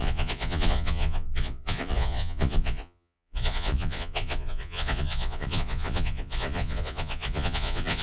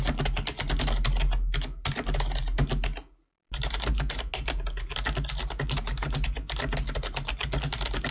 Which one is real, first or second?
second